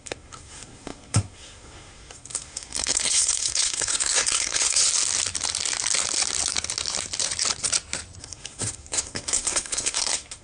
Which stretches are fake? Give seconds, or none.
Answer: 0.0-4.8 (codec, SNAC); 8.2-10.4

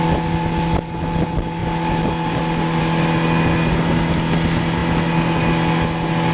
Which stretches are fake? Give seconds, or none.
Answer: none

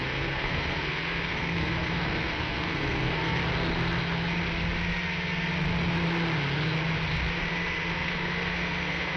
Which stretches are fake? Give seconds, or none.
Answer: 0.0-3.4 (codec, SNAC); 7.9-9.2

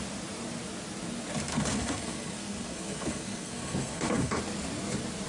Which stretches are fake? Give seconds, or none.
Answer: 1.5-4.4 (codec, SNAC)

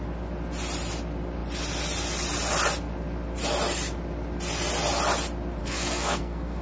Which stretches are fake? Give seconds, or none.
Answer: 5.6-6.6 (codec, SNAC)

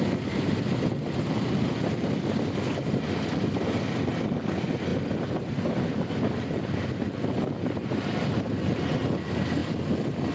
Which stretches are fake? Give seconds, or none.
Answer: none

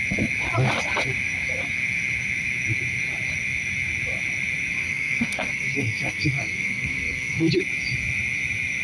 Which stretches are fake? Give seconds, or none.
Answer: 4.8-7.5 (codec, SNAC)